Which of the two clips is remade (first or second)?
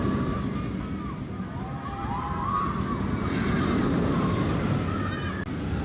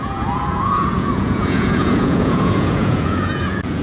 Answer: second